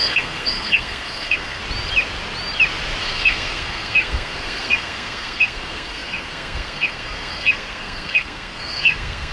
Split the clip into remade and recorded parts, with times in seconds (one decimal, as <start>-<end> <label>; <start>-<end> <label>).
0.0-1.6 remade; 1.6-3.0 recorded; 3.0-9.3 remade